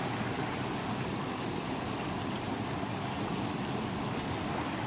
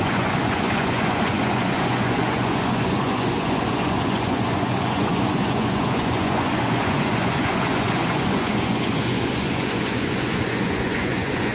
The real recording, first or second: first